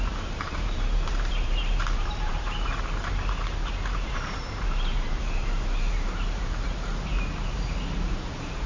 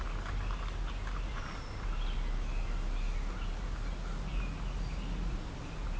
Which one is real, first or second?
second